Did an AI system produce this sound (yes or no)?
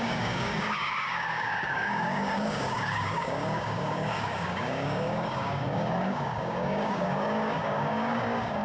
yes